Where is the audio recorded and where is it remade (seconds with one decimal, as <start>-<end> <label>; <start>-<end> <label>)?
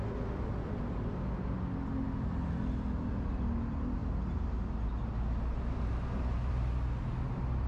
0.0-7.7 recorded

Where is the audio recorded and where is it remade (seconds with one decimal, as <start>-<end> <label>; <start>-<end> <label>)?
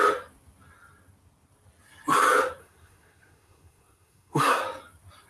0.0-2.6 recorded; 2.6-4.6 remade; 4.6-5.3 recorded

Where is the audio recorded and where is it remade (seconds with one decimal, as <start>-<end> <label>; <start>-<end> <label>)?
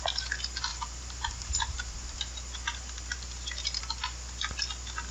0.0-0.7 recorded; 0.7-3.8 remade; 3.8-5.1 recorded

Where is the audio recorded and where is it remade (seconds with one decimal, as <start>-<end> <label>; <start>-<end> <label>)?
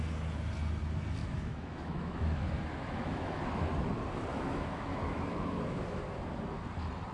0.0-1.2 recorded; 1.2-3.4 remade; 3.4-4.3 recorded; 4.3-6.0 remade; 6.0-7.1 recorded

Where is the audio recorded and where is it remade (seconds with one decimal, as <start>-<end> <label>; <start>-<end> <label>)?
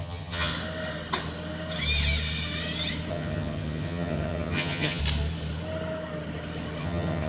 0.0-0.5 remade; 0.5-3.1 recorded; 3.1-5.0 remade; 5.0-6.8 recorded; 6.8-7.3 remade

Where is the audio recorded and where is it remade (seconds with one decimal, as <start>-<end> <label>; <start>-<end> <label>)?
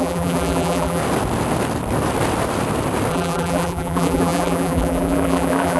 0.0-1.0 remade; 1.0-3.1 recorded; 3.1-5.8 remade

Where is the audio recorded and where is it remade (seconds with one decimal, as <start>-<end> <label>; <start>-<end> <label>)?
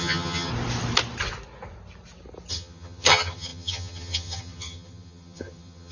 0.0-0.5 remade; 0.5-2.5 recorded; 2.5-5.9 remade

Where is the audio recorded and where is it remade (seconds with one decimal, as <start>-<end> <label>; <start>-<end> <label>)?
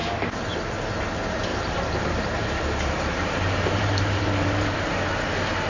0.0-1.5 recorded; 1.5-4.9 remade; 4.9-5.7 recorded